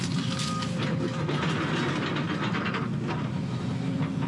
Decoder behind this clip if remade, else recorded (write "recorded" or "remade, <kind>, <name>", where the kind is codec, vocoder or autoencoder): recorded